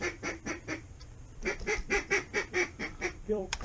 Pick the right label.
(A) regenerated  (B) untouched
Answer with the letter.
A